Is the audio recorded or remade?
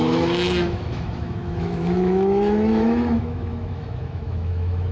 remade